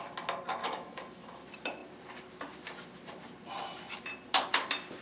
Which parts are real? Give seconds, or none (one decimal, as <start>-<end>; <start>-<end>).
0.0-0.6; 1.4-5.0